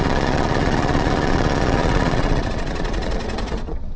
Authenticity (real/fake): fake